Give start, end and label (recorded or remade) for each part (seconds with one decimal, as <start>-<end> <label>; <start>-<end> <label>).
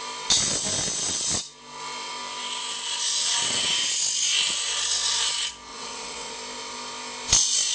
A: 0.0-3.2 recorded; 3.2-3.9 remade; 3.9-5.7 recorded; 5.7-6.3 remade; 6.3-7.7 recorded